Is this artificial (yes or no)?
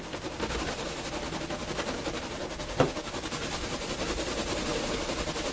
no